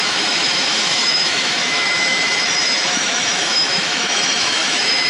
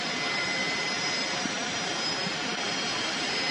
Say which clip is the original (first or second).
second